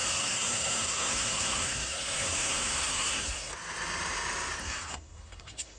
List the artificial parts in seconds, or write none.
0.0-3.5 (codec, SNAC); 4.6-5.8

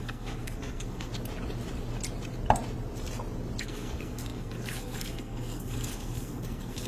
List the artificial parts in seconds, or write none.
0.0-1.1 (codec, SNAC); 3.6-6.9

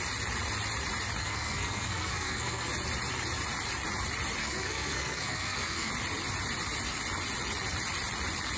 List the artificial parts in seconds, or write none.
1.2-2.7 (codec, SNAC); 4.4-5.9

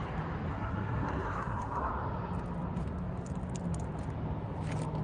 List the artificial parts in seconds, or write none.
0.5-1.9 (codec, SNAC)

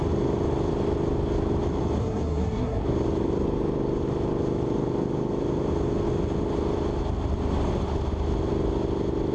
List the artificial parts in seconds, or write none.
2.0-2.8 (codec, SNAC)

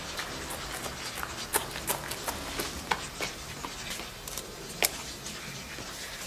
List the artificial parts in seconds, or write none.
none